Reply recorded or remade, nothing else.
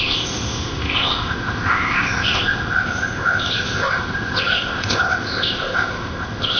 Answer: remade